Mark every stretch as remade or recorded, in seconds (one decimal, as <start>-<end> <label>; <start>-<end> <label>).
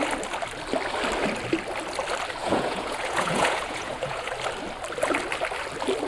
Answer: 0.0-2.4 recorded; 2.4-4.3 remade; 4.3-6.1 recorded